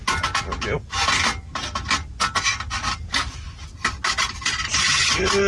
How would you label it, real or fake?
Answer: real